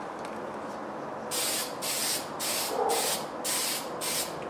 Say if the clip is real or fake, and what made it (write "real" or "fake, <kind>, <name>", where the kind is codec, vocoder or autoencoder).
real